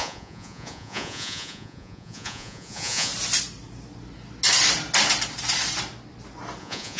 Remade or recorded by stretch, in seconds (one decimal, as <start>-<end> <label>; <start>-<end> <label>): 0.0-3.1 remade; 3.1-6.6 recorded; 6.6-7.0 remade